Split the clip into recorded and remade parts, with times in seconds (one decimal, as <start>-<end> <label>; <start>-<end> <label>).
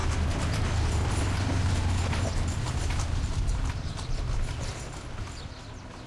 0.0-3.3 recorded; 3.3-4.9 remade; 4.9-6.1 recorded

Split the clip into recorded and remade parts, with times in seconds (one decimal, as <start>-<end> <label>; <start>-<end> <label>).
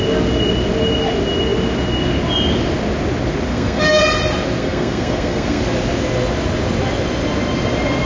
0.0-3.5 recorded; 3.5-4.0 remade; 4.0-4.6 recorded; 4.6-5.6 remade; 5.6-8.1 recorded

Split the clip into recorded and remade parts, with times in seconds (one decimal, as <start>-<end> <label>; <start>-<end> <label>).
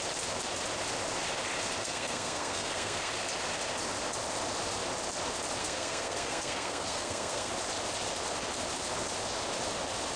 0.0-1.8 recorded; 1.8-3.1 remade; 3.1-5.6 recorded; 5.6-7.5 remade; 7.5-10.2 recorded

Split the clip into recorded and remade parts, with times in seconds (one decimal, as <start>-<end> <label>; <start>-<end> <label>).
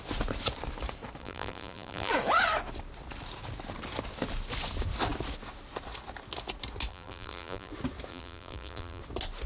0.0-1.2 recorded; 1.2-2.1 remade; 2.1-6.9 recorded; 6.9-7.7 remade; 7.7-8.1 recorded; 8.1-9.0 remade; 9.0-9.5 recorded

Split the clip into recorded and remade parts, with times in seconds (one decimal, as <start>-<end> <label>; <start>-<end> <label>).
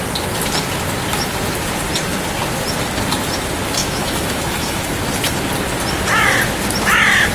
0.0-3.8 recorded; 3.8-4.9 remade; 4.9-7.3 recorded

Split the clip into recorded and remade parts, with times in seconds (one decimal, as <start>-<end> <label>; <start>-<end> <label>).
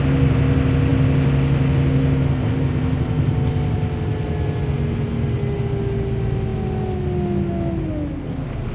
0.0-8.7 recorded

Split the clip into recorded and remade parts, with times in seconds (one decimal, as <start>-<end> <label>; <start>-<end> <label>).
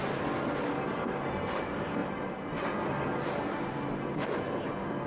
0.0-5.1 recorded